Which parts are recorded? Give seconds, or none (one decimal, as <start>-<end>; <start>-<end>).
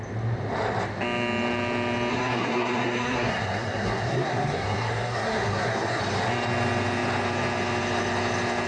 0.0-2.1; 6.0-8.7